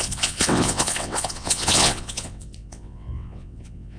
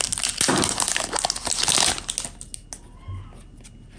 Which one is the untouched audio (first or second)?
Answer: second